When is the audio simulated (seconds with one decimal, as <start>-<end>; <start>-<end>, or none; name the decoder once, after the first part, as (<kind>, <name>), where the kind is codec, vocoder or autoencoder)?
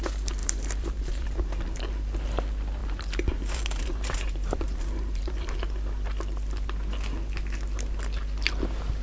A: 0.4-1.8 (vocoder, BigVGAN v2); 2.8-5.6